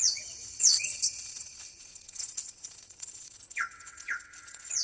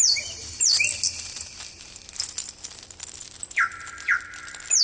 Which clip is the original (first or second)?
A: second